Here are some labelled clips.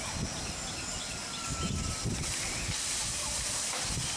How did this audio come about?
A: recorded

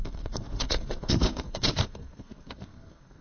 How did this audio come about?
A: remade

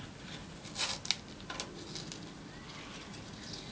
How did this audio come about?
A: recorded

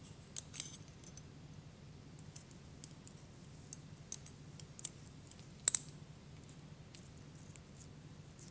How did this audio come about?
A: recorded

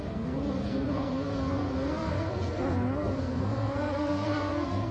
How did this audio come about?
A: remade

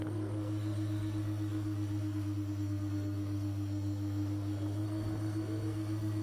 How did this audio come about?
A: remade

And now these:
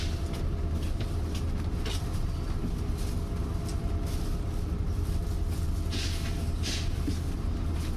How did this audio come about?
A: recorded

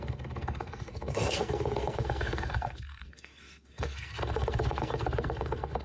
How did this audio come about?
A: remade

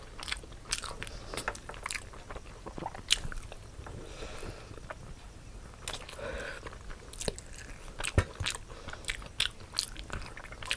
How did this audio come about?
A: recorded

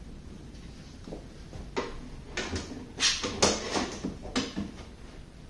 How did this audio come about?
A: recorded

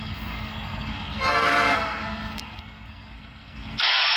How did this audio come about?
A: remade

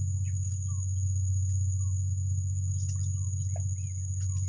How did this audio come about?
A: recorded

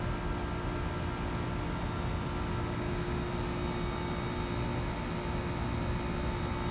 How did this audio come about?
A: recorded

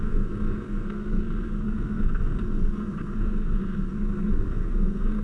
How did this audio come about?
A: remade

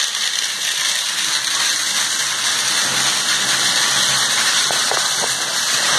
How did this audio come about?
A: recorded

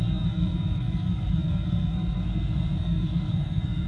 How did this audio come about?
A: remade